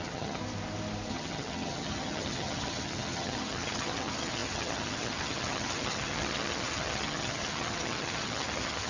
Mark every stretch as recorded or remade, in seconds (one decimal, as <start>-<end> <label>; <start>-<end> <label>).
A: 0.0-0.4 remade; 0.4-1.1 recorded; 1.1-8.9 remade